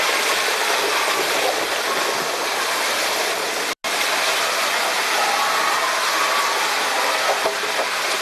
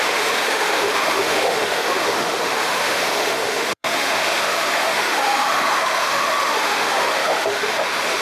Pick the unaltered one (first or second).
first